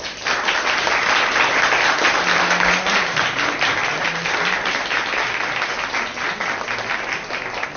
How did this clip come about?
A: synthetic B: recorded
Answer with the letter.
B